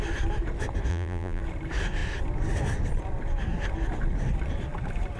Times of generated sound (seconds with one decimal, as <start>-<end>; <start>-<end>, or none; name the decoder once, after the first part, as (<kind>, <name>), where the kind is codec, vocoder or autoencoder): 0.9-1.4 (vocoder, BigVGAN v2)